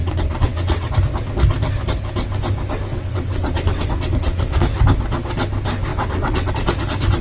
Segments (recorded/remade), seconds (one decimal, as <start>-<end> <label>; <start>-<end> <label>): 0.0-0.9 remade; 0.9-2.9 recorded; 2.9-4.6 remade; 4.6-5.9 recorded; 5.9-6.5 remade; 6.5-7.2 recorded